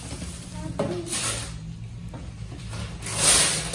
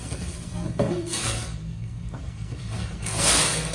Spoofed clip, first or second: second